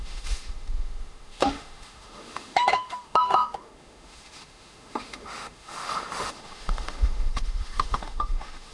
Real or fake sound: fake